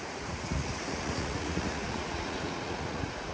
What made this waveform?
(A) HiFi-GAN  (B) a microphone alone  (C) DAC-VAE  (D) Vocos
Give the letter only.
D